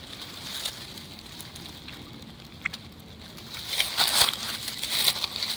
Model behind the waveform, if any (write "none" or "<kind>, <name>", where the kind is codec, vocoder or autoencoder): none